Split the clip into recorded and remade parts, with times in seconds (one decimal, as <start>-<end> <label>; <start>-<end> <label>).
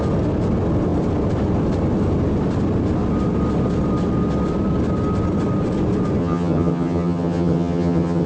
0.0-6.2 recorded; 6.2-8.3 remade